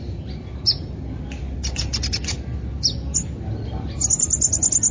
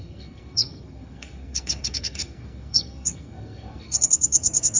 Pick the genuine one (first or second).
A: first